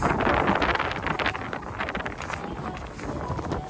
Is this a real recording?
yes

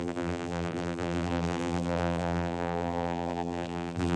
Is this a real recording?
no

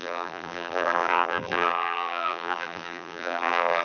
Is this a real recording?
no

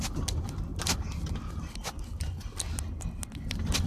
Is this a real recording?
yes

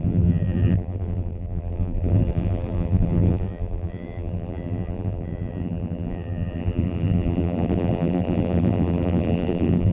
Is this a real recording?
no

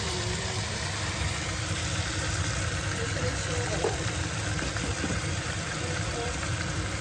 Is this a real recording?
no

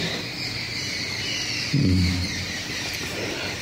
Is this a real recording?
yes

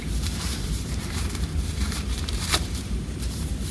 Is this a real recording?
no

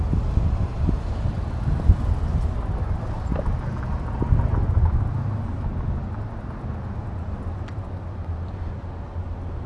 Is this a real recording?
yes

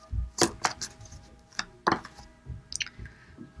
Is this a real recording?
yes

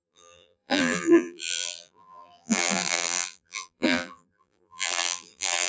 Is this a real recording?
no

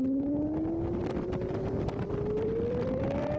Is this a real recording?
no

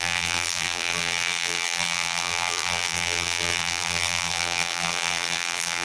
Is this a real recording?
no